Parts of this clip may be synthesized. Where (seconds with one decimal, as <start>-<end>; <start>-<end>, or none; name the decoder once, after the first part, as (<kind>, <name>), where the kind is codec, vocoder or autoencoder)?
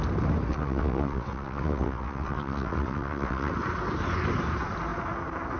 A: 0.5-3.5 (vocoder, WaveNeXt)